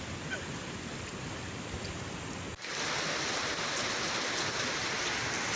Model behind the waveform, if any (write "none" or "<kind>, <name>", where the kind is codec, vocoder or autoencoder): none